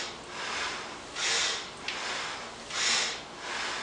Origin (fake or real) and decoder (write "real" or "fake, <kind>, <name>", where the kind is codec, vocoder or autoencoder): real